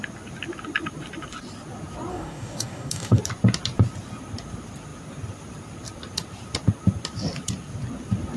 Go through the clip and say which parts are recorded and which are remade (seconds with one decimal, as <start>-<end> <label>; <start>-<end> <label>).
0.0-2.1 recorded; 2.1-3.2 remade; 3.2-8.4 recorded